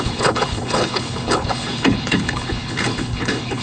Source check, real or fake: fake